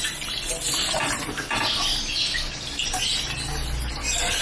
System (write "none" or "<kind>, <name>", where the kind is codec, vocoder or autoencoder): none